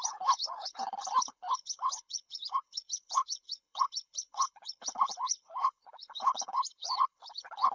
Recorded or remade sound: remade